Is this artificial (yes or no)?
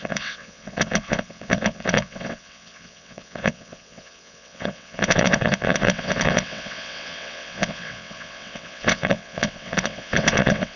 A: yes